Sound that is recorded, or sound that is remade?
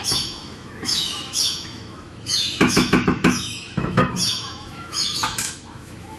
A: remade